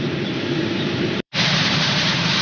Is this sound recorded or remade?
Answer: remade